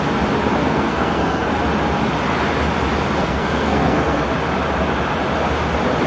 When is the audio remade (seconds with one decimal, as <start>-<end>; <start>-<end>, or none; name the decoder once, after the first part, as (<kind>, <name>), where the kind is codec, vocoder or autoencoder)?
0.6-1.5 (codec, SNAC); 3.2-4.2